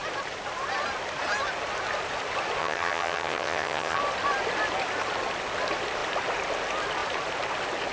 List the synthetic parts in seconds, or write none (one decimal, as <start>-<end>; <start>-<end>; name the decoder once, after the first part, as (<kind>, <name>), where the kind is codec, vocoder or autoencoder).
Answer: 2.6-4.0 (vocoder, HiFi-GAN)